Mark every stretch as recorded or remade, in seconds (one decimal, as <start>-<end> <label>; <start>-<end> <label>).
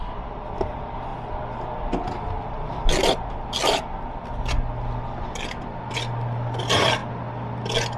0.0-8.0 recorded